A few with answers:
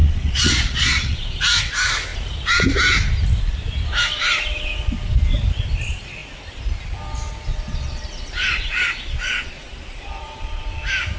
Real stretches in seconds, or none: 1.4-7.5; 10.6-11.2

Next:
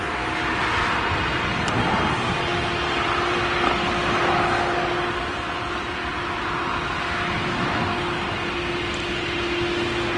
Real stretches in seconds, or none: 0.0-10.2

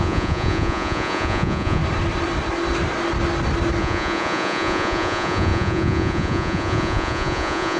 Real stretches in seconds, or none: 1.8-3.8

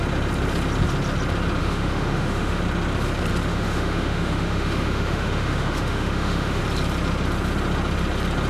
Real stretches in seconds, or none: 0.0-1.6; 2.6-3.5; 6.6-8.5